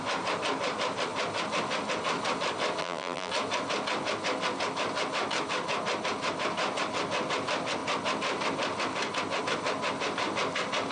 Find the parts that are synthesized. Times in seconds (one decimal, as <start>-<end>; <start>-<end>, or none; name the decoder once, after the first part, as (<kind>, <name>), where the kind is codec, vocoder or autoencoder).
2.8-3.3 (vocoder, BigVGAN v2)